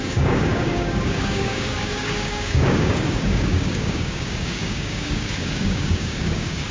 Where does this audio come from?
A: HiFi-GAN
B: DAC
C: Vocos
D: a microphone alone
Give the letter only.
B